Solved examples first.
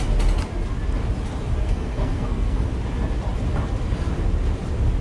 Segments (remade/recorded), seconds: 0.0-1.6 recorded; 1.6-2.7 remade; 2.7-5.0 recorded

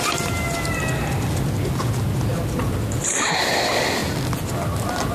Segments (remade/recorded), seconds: 0.0-5.1 recorded

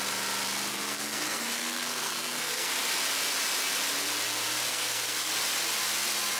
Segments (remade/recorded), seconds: 0.0-0.7 recorded; 0.7-2.7 remade; 2.7-4.7 recorded; 4.7-5.3 remade; 5.3-6.4 recorded